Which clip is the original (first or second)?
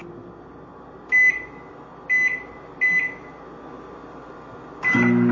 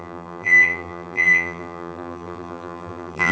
first